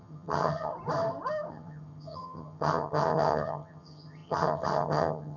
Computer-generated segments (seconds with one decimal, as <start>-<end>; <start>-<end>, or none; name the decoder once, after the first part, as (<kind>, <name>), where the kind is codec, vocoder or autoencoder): 0.0-0.7 (vocoder, HiFi-GAN); 1.5-5.4